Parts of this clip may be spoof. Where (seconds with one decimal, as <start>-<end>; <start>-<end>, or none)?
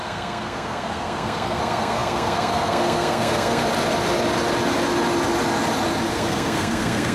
0.0-3.6; 6.1-7.1